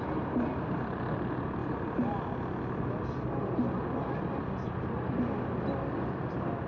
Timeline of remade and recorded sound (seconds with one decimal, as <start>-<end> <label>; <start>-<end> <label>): 0.0-6.7 recorded